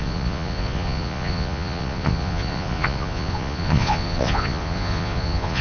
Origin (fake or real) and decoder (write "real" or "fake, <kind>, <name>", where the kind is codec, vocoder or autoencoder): fake, vocoder, Vocos